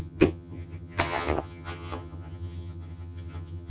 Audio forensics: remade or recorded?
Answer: remade